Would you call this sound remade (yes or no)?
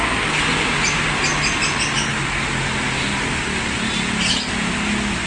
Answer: no